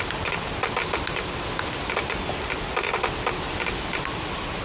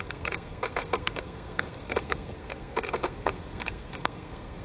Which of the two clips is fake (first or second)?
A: second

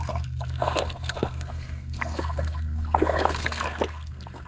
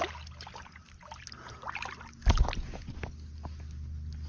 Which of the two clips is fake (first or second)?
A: first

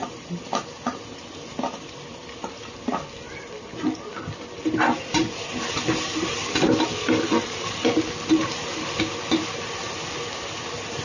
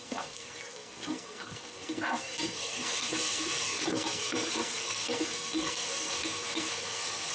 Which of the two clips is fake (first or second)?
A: second